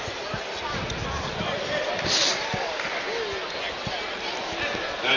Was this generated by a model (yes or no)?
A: no